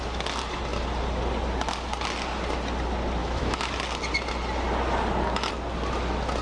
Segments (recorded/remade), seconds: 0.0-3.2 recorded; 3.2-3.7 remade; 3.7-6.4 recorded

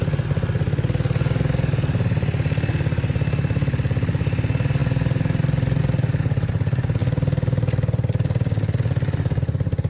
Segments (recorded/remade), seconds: 0.0-9.9 recorded

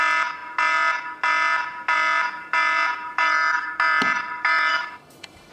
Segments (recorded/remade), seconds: 0.0-4.7 recorded; 4.7-5.5 remade